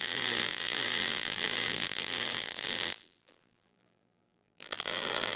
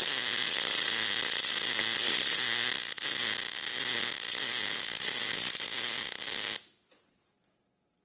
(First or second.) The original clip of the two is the second